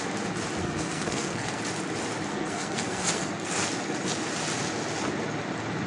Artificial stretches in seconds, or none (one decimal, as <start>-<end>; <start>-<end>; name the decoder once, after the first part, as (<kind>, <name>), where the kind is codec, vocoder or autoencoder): 0.6-1.6 (codec, SNAC); 2.3-3.5